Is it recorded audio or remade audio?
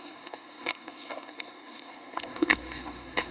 remade